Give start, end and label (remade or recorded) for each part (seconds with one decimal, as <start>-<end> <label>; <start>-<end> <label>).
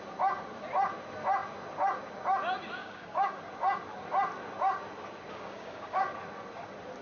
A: 0.0-2.8 recorded; 2.8-3.4 remade; 3.4-5.3 recorded; 5.3-6.0 remade; 6.0-7.0 recorded